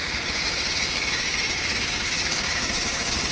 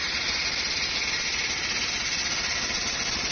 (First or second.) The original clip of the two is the second